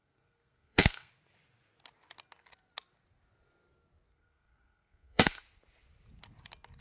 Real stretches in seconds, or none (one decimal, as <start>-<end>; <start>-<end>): 1.1-4.1; 5.4-6.8